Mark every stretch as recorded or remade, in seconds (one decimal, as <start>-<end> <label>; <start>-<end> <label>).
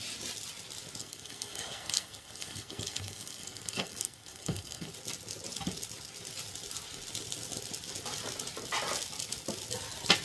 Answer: 0.0-1.0 recorded; 1.0-4.9 remade; 4.9-10.2 recorded